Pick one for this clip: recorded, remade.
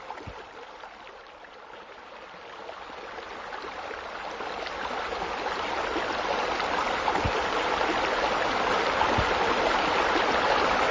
recorded